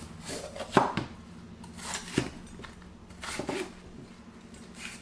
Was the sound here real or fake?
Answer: real